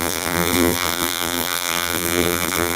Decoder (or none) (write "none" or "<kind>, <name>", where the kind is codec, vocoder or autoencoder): vocoder, BigVGAN v2